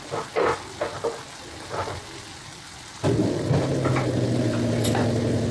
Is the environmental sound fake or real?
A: real